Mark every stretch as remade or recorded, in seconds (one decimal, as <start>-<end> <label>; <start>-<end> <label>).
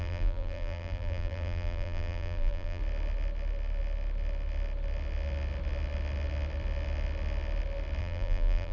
0.0-2.8 remade; 2.8-8.0 recorded; 8.0-8.7 remade